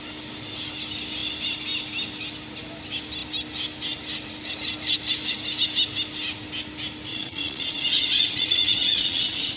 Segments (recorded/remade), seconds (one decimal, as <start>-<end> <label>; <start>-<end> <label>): 0.0-7.1 recorded; 7.1-9.6 remade

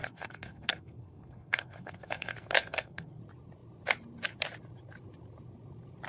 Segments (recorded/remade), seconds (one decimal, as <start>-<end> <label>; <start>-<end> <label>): 0.0-3.2 remade; 3.2-6.1 recorded

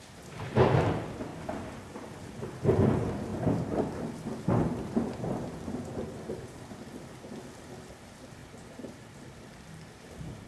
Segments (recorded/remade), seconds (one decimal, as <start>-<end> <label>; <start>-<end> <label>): 0.0-1.3 recorded; 1.3-1.9 remade; 1.9-3.3 recorded; 3.3-4.0 remade; 4.0-4.6 recorded; 4.6-6.9 remade; 6.9-8.4 recorded; 8.4-10.5 remade

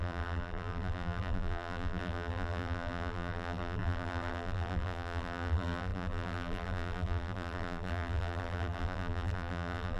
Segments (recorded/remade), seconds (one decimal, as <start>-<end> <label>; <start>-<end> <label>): 0.0-10.0 remade